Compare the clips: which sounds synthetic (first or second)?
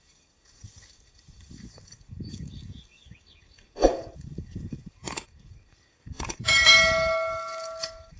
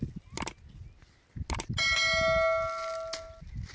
first